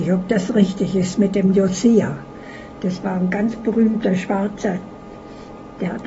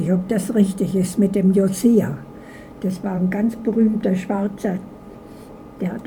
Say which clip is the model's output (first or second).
second